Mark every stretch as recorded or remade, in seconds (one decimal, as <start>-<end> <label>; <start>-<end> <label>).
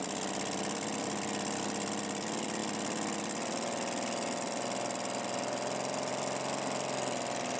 0.0-7.6 recorded